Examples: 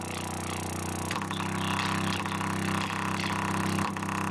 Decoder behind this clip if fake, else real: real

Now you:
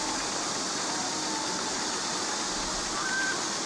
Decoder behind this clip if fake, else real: real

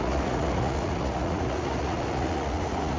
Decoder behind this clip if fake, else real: fake, vocoder, Vocos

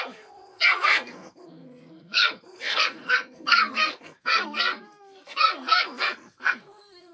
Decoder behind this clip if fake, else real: fake, codec, SNAC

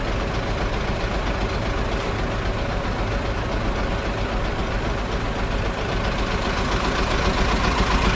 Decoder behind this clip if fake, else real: real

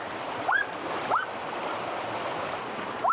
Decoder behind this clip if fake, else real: real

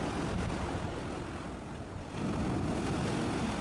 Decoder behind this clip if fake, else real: real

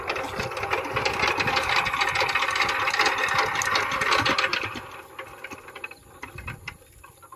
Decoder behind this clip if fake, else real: real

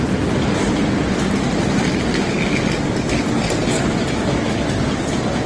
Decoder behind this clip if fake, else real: real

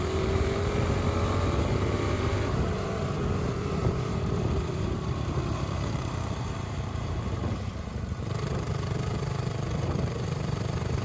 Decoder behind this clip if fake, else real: fake, vocoder, BigVGAN v2